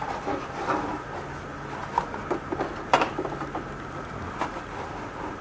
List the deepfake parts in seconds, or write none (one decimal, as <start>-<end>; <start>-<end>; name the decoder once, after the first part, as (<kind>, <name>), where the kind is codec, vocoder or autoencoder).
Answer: none